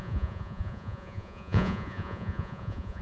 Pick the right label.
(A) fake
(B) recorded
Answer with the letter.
A